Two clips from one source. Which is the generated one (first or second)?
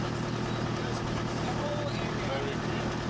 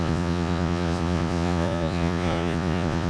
second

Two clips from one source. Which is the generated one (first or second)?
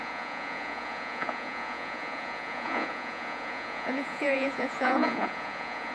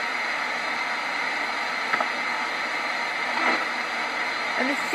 first